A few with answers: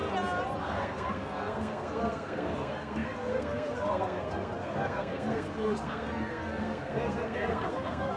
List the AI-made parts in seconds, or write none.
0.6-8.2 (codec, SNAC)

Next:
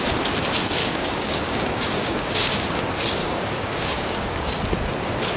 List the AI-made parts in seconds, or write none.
0.8-2.8 (codec, DAC); 3.2-4.5